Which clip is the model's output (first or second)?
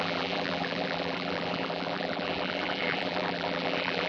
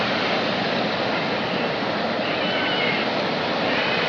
first